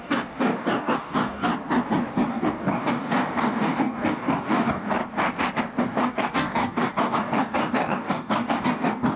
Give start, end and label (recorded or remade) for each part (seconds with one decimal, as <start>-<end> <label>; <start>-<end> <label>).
0.0-1.5 remade; 1.5-2.3 recorded; 2.3-5.0 remade; 5.0-5.8 recorded; 5.8-9.2 remade